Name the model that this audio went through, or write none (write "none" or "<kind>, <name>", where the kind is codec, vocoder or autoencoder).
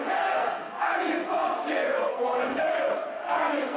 codec, SNAC